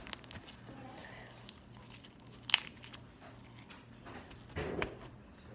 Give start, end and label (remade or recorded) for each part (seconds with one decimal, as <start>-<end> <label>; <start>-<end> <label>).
0.0-5.5 recorded